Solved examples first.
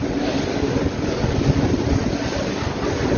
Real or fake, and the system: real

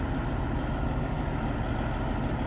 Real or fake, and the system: real